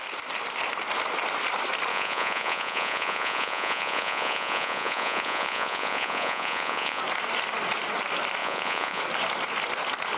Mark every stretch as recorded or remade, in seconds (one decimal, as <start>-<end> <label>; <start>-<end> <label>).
0.0-1.9 recorded; 1.9-7.0 remade; 7.0-8.4 recorded; 8.4-9.0 remade; 9.0-10.2 recorded